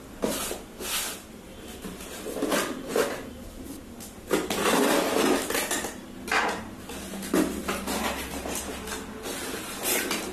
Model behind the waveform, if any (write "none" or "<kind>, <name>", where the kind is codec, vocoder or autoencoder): none